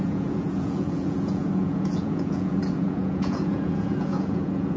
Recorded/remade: remade